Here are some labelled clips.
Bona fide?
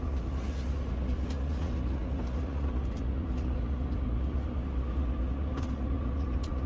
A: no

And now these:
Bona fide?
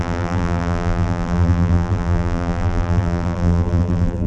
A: no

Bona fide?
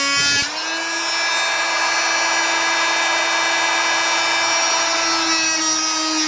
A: yes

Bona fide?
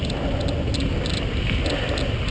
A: yes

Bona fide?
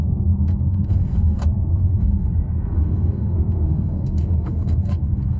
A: no